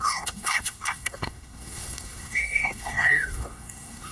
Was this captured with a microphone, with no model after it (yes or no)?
no